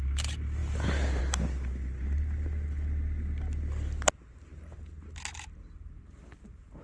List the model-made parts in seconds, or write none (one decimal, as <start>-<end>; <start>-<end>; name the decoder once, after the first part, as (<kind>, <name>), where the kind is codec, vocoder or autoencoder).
none

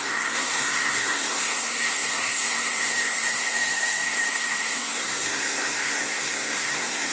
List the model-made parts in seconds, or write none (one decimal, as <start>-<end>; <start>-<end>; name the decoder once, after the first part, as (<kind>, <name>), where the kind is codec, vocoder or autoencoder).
0.0-7.1 (codec, SNAC)

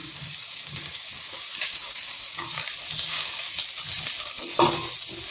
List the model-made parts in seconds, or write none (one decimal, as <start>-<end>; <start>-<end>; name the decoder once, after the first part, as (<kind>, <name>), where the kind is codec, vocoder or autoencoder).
0.0-2.5 (codec, DAC); 3.1-3.6

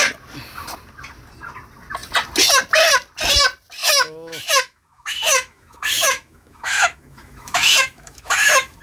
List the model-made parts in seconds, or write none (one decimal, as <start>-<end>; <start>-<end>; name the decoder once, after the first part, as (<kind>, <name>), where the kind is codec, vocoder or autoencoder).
3.8-8.8 (autoencoder, DAC-VAE)

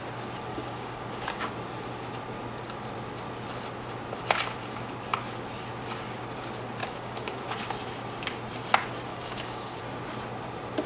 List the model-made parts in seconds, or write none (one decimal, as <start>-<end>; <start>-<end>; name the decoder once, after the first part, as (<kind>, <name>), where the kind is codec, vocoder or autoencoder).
0.5-1.5 (codec, DAC); 6.8-7.4; 9.1-9.8